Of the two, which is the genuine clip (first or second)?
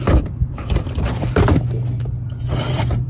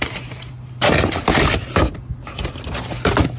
second